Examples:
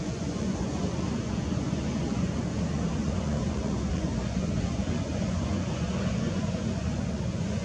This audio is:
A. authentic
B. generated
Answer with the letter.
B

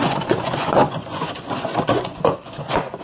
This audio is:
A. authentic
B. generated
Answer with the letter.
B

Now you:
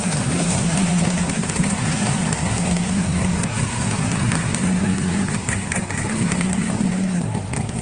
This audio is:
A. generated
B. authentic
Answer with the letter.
A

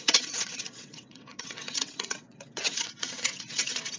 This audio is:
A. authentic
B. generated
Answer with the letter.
B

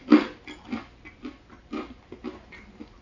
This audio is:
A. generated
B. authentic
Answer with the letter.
B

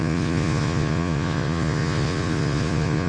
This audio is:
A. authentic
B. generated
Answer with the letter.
B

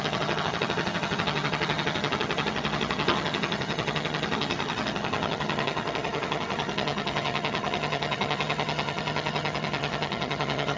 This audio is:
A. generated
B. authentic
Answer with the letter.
A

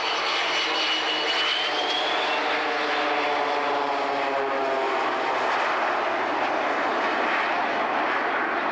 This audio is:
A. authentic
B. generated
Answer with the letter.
A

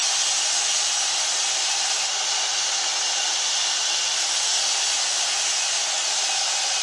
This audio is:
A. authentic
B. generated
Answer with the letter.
A